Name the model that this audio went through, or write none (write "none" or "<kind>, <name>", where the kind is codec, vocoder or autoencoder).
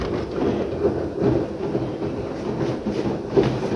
none